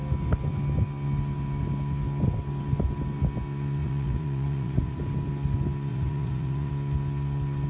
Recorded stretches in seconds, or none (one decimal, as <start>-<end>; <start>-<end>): 0.0-3.8; 5.0-5.9; 6.7-7.7